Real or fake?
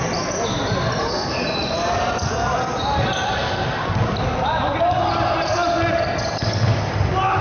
real